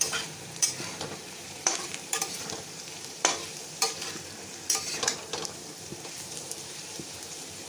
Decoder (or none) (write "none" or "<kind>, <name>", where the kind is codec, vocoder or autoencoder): vocoder, BigVGAN v2